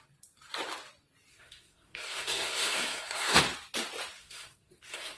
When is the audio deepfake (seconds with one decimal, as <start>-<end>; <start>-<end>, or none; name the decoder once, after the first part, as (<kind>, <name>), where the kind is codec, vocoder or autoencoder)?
1.3-3.4 (codec, SNAC); 4.2-5.2